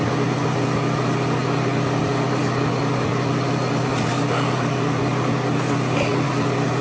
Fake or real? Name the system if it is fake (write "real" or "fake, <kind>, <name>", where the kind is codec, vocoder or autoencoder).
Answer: real